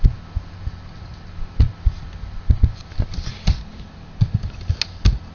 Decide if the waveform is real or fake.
real